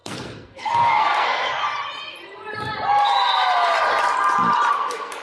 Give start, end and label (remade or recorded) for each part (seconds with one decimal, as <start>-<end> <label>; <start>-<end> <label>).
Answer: 0.0-1.6 remade; 1.6-4.7 recorded; 4.7-5.2 remade